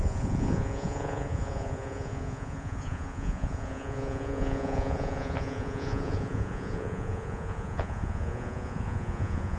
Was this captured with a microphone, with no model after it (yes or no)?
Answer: no